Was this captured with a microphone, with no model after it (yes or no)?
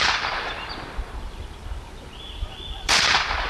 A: no